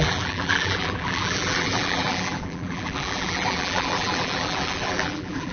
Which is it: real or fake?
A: fake